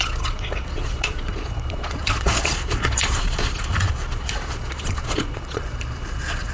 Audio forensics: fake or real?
fake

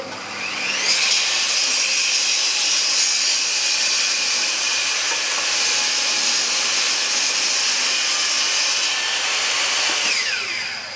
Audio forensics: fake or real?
real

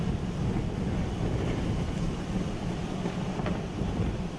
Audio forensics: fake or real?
real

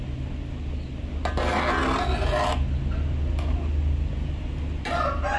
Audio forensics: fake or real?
real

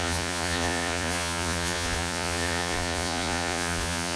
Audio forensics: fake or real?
fake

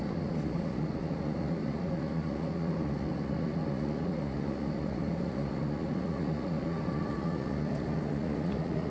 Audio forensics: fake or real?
fake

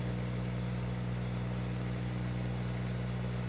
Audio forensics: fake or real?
real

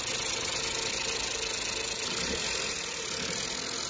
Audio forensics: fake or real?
real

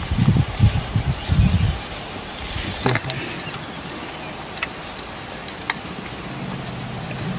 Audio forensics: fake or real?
real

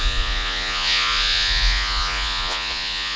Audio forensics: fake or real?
fake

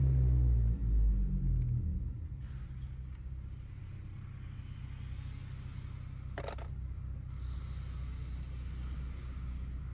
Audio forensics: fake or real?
real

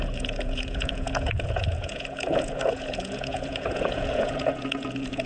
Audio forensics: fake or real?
fake